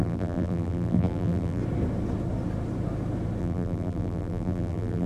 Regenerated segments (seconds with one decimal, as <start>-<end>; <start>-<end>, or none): 0.0-1.6; 3.4-5.1